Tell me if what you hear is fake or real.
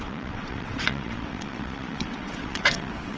fake